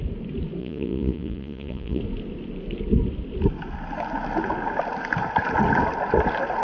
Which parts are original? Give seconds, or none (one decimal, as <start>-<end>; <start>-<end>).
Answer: 0.0-0.6; 2.0-6.6